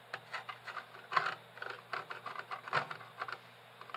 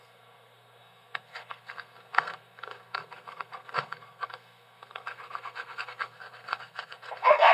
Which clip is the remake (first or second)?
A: second